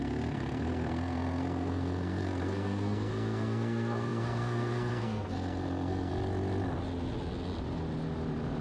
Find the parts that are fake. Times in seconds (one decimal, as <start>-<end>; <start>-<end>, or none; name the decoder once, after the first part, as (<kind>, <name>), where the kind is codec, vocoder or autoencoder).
0.0-6.1 (codec, SNAC)